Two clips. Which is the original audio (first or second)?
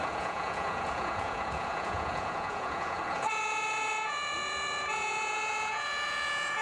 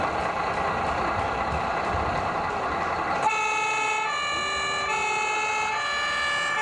second